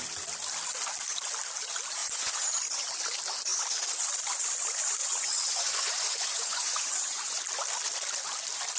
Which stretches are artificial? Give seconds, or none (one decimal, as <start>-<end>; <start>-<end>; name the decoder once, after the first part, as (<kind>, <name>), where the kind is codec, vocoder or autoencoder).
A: 2.0-2.6 (vocoder, Vocos); 5.0-7.4